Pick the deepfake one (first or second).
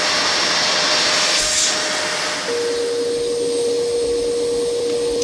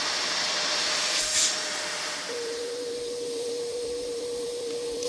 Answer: second